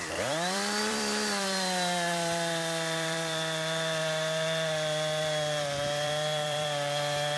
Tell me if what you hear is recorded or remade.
remade